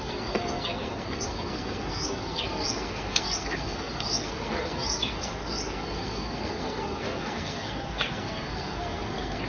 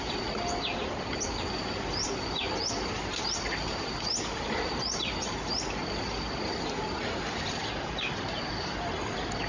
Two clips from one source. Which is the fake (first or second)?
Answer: first